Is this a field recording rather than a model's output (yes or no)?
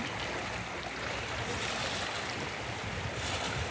yes